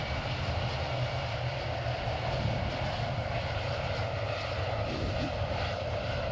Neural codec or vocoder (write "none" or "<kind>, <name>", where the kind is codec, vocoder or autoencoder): none